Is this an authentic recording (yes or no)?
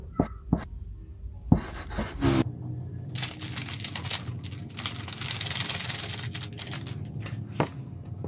yes